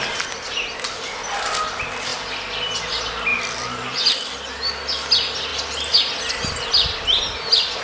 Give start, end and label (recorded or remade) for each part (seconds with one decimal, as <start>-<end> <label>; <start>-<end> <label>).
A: 0.0-2.1 recorded; 2.1-2.8 remade; 2.8-3.3 recorded; 3.3-4.3 remade; 4.3-7.8 recorded